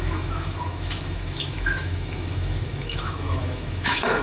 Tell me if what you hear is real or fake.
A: fake